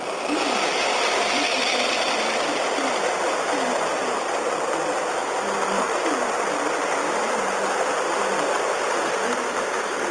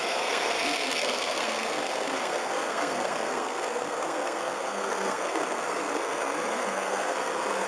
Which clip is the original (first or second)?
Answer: first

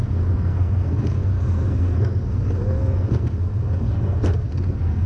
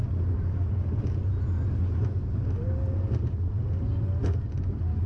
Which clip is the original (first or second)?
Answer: second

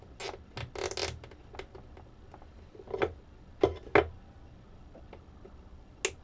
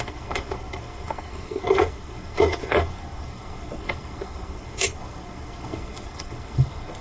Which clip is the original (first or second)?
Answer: first